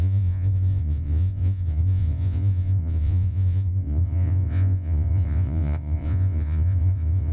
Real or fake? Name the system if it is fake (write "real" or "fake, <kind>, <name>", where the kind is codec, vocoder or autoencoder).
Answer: fake, vocoder, Vocos